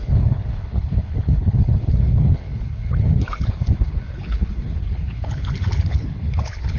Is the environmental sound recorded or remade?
remade